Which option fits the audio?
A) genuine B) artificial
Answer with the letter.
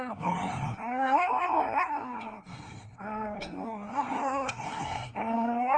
B